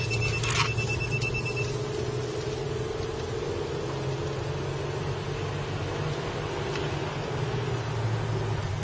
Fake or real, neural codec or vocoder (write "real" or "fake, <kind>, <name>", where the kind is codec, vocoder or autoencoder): real